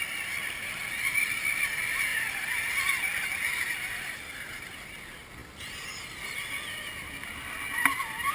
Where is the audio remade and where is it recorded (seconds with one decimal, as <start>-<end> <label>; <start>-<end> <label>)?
0.0-8.3 recorded